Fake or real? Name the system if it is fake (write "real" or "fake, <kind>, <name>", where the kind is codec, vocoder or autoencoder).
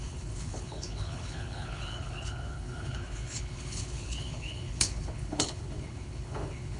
fake, codec, HILCodec